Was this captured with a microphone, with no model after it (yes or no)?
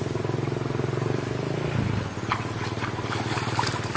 yes